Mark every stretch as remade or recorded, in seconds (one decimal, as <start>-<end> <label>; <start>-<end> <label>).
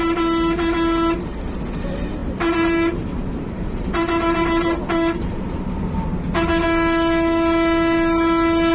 0.0-2.2 recorded; 2.2-5.8 remade; 5.8-8.7 recorded